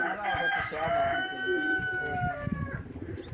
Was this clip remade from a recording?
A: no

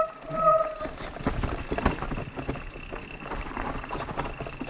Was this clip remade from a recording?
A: no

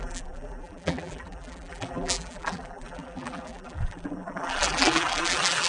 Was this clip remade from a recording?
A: yes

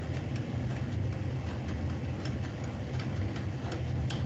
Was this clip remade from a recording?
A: no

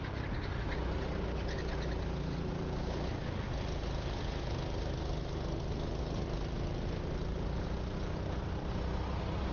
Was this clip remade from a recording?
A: no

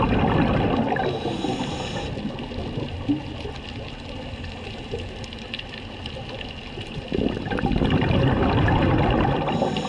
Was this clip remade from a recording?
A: no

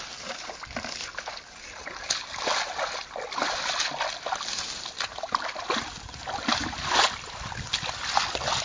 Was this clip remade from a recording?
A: no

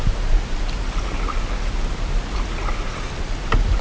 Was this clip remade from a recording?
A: no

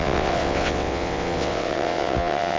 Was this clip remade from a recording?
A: yes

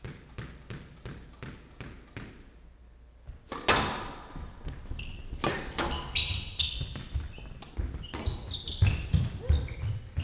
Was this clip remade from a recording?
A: no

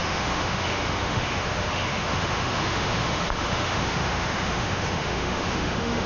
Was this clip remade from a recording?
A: yes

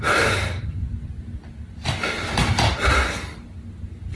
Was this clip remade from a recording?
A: no